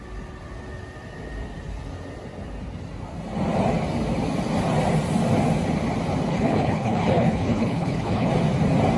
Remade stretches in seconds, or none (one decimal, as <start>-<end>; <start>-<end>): 6.3-8.3